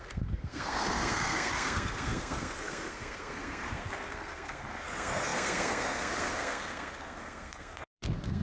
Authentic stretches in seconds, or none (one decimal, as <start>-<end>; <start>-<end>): none